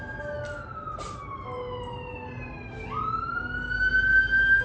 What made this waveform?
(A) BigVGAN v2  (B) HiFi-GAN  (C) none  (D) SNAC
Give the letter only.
C